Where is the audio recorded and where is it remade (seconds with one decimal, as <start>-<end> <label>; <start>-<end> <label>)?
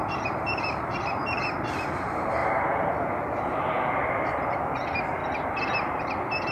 0.0-5.2 remade; 5.2-6.0 recorded; 6.0-6.5 remade